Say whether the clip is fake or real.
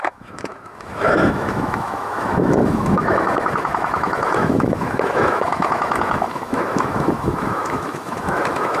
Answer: fake